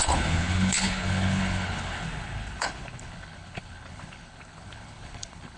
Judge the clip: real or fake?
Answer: fake